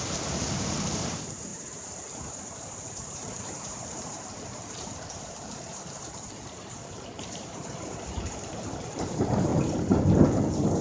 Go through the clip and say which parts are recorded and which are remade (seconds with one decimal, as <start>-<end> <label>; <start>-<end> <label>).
0.0-9.5 remade; 9.5-10.8 recorded